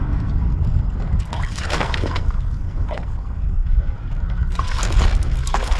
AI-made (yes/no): yes